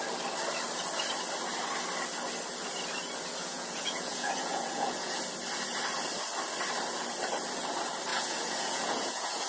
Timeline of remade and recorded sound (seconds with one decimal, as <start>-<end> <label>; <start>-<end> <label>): 0.0-3.4 recorded; 3.4-5.2 remade; 5.2-8.1 recorded; 8.1-9.5 remade